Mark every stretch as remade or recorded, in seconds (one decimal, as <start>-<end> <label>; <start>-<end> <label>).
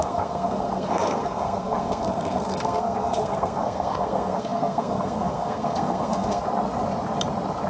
0.0-6.4 remade; 6.4-7.7 recorded